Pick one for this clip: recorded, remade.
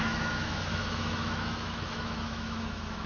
remade